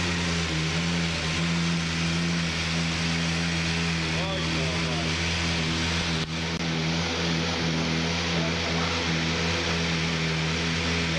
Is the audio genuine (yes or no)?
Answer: yes